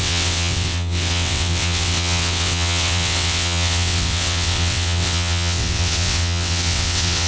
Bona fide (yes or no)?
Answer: no